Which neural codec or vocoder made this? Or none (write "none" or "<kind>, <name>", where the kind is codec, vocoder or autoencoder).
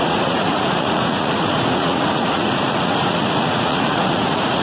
vocoder, Vocos